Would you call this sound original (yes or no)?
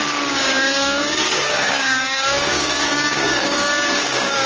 no